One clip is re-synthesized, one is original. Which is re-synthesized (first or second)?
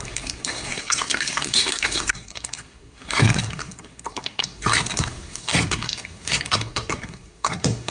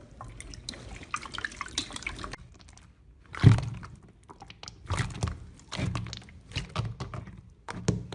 first